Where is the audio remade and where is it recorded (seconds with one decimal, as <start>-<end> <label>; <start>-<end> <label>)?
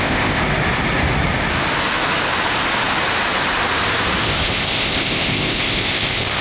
0.0-0.4 remade; 0.4-4.2 recorded; 4.2-6.4 remade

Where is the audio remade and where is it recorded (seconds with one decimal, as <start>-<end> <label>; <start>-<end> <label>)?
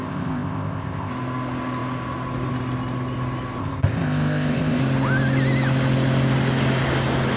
0.0-1.1 remade; 1.1-3.6 recorded; 3.6-4.8 remade; 4.8-7.4 recorded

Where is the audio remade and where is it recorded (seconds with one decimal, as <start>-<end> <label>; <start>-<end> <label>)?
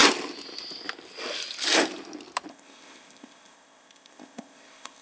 0.0-2.5 recorded; 2.5-5.0 remade